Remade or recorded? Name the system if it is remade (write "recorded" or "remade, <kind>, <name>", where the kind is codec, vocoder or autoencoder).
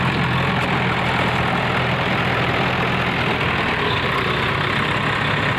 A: remade, vocoder, BigVGAN v2